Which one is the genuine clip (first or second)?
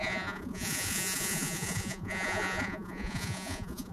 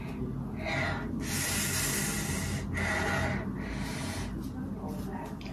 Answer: second